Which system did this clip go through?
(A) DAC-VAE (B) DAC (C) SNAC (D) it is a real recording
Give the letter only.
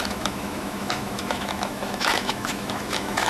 A